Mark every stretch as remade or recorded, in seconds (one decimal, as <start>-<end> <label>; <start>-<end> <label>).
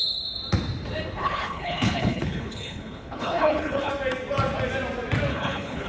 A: 0.0-1.2 recorded; 1.2-3.9 remade; 3.9-5.3 recorded; 5.3-5.9 remade